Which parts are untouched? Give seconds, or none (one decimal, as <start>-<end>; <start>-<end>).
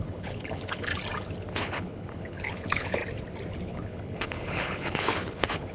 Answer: 0.9-1.6; 3.0-3.5